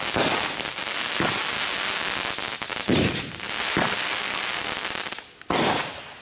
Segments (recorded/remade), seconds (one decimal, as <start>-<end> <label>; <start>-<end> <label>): 0.0-6.2 recorded